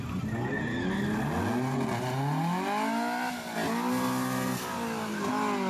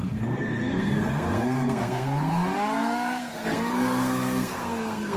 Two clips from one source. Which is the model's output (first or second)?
second